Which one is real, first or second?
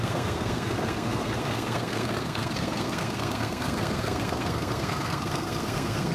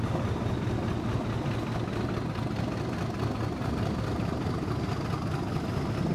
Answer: second